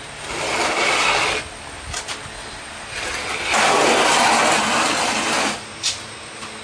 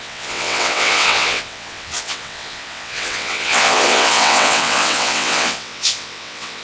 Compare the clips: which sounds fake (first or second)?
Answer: second